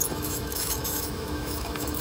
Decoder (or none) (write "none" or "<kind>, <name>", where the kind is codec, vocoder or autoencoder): autoencoder, DAC-VAE